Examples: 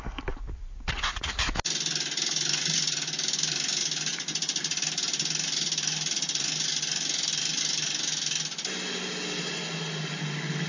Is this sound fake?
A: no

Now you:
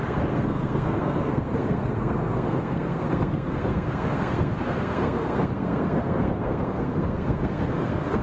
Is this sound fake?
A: yes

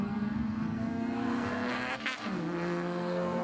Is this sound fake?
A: yes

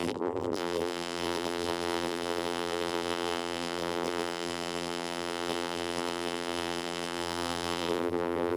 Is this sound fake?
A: yes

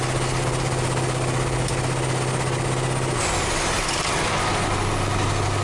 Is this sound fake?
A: no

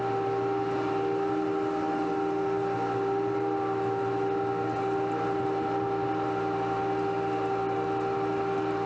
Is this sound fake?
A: no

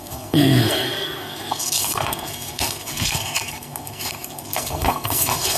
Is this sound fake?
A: yes